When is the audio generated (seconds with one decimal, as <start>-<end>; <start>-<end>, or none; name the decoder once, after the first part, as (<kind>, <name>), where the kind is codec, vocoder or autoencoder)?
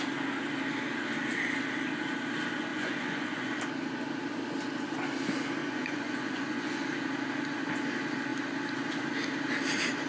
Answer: 2.7-3.5 (vocoder, Vocos); 5.6-6.8